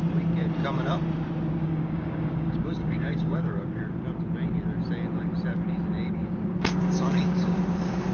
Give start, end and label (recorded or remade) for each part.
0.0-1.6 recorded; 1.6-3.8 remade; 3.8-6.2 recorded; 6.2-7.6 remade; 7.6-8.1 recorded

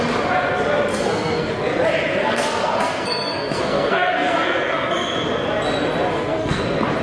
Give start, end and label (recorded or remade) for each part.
0.0-0.9 recorded; 0.9-1.5 remade; 1.5-2.2 recorded; 2.2-4.9 remade; 4.9-6.1 recorded; 6.1-6.6 remade; 6.6-7.0 recorded

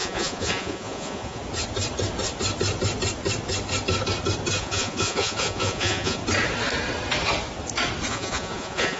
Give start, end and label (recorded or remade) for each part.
0.0-1.4 remade; 1.4-4.6 recorded; 4.6-6.2 remade; 6.2-8.1 recorded; 8.1-9.0 remade

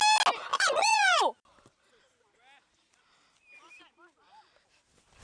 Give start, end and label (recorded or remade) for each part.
0.0-0.5 recorded; 0.5-1.2 remade; 1.2-5.2 recorded

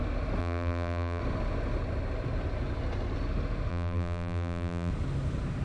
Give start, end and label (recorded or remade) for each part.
0.0-0.4 recorded; 0.4-1.2 remade; 1.2-3.7 recorded; 3.7-4.9 remade; 4.9-5.6 recorded

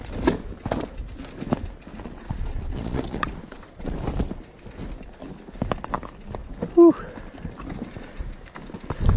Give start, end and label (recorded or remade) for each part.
0.0-1.9 recorded; 1.9-3.9 remade; 3.9-9.2 recorded

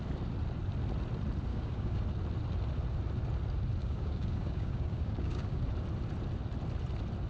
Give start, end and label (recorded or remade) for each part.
0.0-1.5 recorded; 1.5-2.0 remade; 2.0-3.8 recorded; 3.8-5.6 remade; 5.6-7.3 recorded

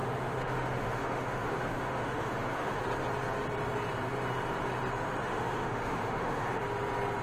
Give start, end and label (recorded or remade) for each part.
0.0-2.8 remade; 2.8-5.2 recorded; 5.2-6.6 remade; 6.6-7.2 recorded